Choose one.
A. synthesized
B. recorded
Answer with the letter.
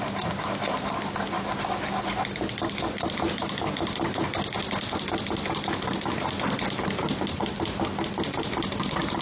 B